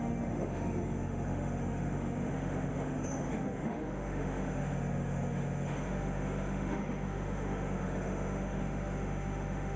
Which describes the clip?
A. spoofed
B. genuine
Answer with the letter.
A